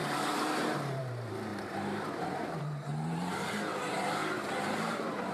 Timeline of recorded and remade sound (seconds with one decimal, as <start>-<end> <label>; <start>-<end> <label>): 0.0-4.2 remade; 4.2-4.8 recorded; 4.8-5.3 remade